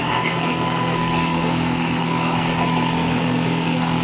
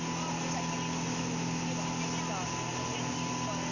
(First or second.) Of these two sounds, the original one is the second